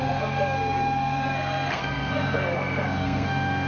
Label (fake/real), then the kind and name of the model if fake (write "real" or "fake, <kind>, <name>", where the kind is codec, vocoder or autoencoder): fake, codec, SNAC